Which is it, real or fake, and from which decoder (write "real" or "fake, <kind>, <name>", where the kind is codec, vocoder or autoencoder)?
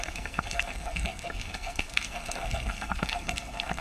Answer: fake, codec, SNAC